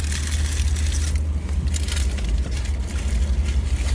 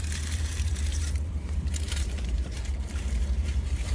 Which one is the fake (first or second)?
second